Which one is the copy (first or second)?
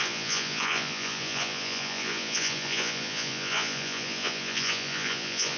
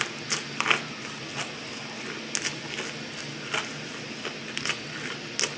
first